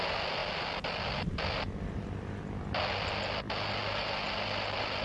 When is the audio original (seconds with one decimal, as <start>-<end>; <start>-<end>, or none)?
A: 0.0-5.0

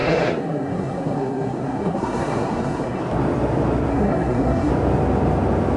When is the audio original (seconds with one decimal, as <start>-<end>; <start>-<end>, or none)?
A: 3.0-3.9; 4.7-5.8